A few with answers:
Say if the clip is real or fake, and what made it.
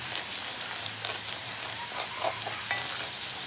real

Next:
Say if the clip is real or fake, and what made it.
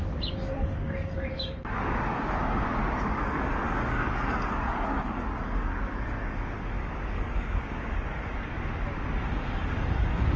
fake, codec, DAC